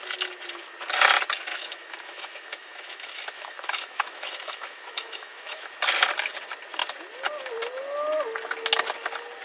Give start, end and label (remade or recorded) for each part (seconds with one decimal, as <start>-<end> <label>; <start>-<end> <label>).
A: 0.0-1.5 recorded; 1.5-5.7 remade; 5.7-9.4 recorded